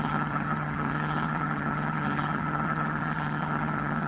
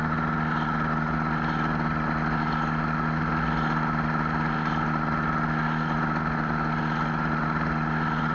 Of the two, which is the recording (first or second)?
second